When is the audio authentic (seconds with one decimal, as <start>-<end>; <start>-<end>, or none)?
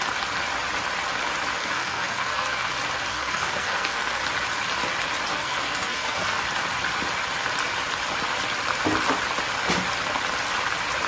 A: 0.0-1.6; 2.7-3.1; 4.2-5.3; 6.4-11.1